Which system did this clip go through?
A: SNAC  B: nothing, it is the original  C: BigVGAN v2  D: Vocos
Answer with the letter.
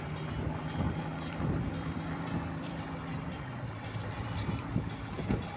C